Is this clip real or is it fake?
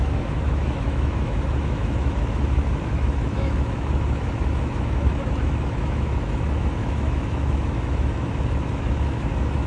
fake